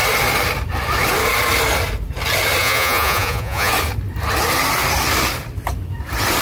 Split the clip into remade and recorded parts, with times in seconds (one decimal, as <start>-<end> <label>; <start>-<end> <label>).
0.0-2.6 recorded; 2.6-3.7 remade; 3.7-6.4 recorded